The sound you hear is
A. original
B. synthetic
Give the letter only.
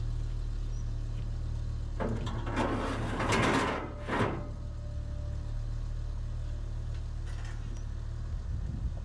A